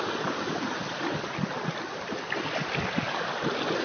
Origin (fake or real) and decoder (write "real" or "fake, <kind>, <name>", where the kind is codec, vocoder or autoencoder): real